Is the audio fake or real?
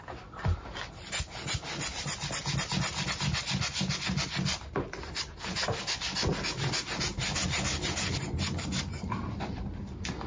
real